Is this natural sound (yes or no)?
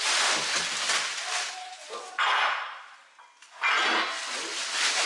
yes